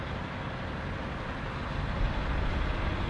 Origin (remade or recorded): recorded